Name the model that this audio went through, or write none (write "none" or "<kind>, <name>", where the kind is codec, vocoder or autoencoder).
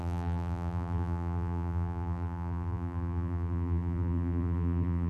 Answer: vocoder, BigVGAN v2